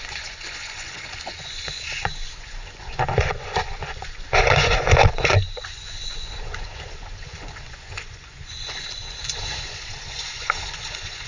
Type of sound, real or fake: fake